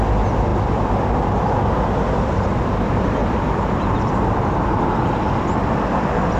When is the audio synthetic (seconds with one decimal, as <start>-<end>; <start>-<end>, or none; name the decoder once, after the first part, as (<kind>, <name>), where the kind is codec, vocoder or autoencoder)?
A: 3.2-4.8 (vocoder, BigVGAN v2)